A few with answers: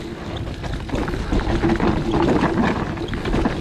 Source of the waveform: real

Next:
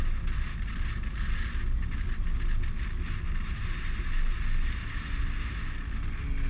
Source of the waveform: real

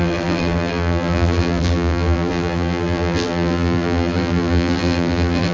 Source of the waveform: fake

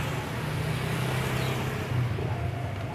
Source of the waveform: real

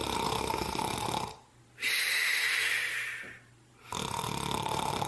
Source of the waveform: real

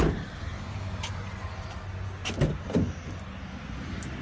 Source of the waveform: real